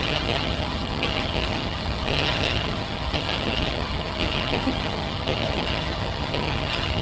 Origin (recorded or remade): remade